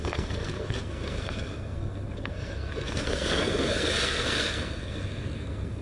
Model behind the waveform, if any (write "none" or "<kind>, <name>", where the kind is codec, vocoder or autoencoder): codec, SNAC